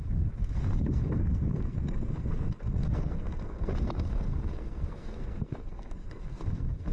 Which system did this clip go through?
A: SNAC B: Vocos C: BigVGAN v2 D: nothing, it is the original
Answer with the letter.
A